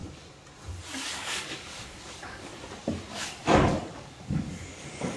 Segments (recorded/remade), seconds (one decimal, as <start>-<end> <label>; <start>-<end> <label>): 0.0-1.1 recorded; 1.1-2.5 remade; 2.5-3.1 recorded; 3.1-5.2 remade